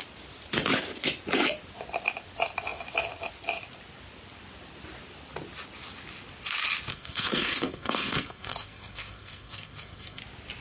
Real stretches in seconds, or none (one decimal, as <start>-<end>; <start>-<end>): 0.0-6.9; 10.2-10.6